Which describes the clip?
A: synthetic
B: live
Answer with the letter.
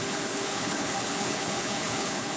A